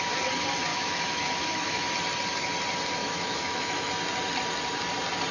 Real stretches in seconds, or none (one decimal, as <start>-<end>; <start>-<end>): 0.0-0.7; 1.9-3.0; 3.9-5.3